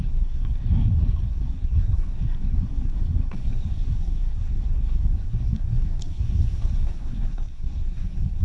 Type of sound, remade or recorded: remade